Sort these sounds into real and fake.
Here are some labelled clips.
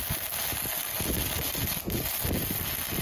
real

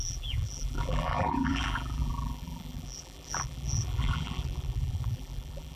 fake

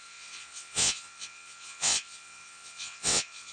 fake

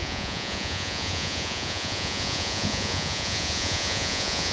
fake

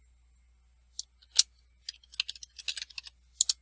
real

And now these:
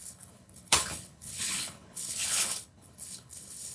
fake